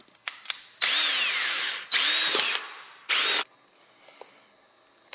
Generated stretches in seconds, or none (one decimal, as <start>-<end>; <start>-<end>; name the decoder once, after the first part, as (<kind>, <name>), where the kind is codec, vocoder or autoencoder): none